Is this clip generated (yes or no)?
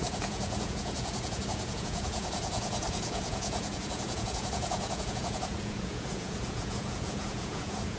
yes